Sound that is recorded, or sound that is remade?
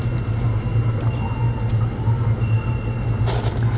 recorded